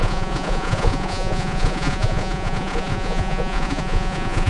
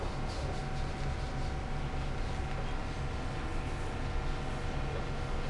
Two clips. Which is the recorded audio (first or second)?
second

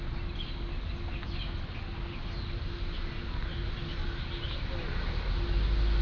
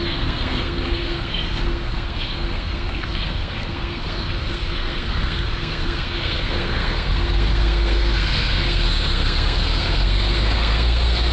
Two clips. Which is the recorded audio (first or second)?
first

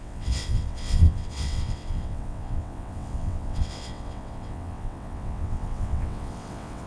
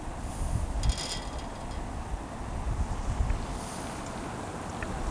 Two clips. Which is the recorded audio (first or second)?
second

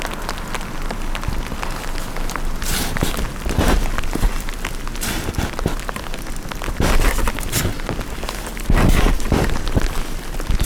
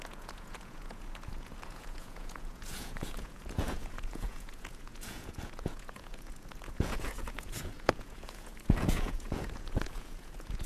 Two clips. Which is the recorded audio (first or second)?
first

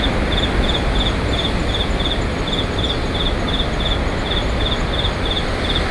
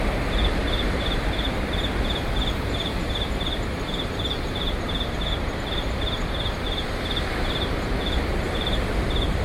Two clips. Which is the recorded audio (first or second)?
first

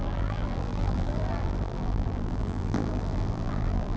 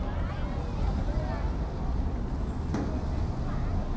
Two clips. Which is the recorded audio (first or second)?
second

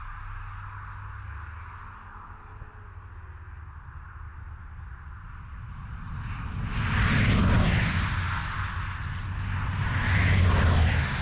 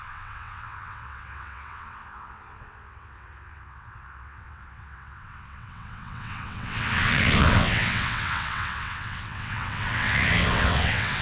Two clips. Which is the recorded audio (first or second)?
first